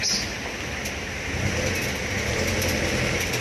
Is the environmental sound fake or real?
real